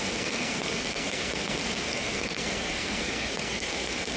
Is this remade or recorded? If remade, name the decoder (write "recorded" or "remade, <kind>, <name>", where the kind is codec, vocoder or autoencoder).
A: remade, codec, SNAC